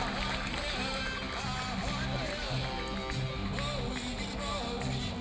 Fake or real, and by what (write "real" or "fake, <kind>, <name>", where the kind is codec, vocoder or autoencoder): real